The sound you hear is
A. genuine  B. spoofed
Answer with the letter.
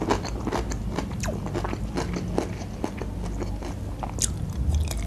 A